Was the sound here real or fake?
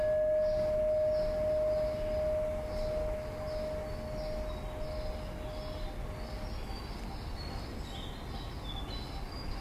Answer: real